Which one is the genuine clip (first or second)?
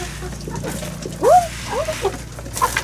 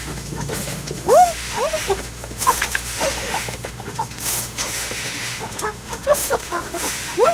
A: first